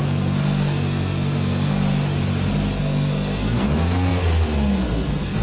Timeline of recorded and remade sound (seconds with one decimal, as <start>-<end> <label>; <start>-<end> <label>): 0.0-1.8 remade; 1.8-2.8 recorded; 2.8-5.4 remade